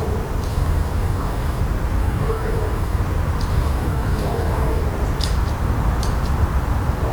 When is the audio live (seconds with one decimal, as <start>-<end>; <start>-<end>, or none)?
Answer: 0.0-0.5; 1.6-2.0; 3.0-3.5; 4.8-7.1